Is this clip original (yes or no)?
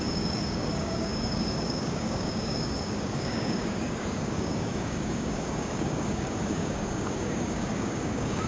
no